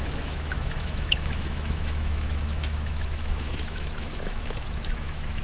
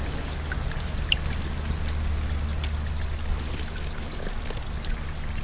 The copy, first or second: first